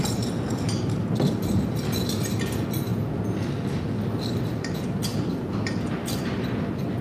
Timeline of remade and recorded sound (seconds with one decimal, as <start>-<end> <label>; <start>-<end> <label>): 0.0-7.0 recorded